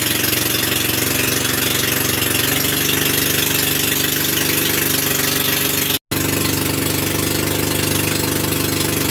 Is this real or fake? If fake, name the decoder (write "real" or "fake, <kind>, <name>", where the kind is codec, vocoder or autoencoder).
real